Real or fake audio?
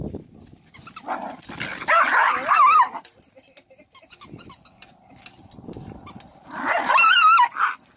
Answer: real